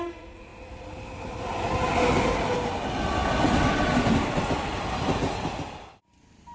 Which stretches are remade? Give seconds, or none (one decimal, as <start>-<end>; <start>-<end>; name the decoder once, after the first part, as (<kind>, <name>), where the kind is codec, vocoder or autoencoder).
none